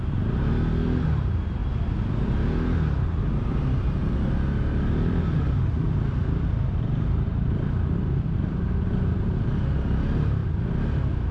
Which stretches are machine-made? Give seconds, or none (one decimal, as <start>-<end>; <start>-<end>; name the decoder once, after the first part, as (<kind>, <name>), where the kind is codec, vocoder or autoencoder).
none